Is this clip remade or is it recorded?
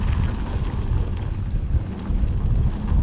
recorded